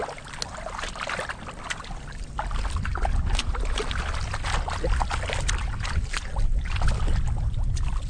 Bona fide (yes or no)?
yes